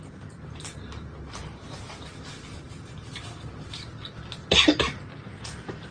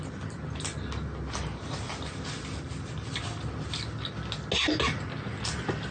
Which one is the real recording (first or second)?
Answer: second